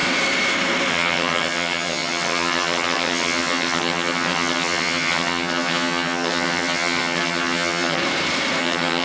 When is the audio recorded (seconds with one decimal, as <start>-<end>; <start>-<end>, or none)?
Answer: 0.0-0.9; 8.0-8.6